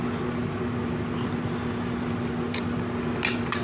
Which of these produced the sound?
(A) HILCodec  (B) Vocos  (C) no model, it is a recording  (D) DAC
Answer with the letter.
C